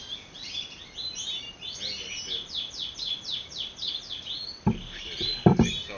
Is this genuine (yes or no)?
yes